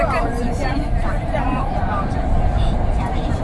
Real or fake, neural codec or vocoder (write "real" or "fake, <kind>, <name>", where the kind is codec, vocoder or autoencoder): fake, vocoder, BigVGAN v2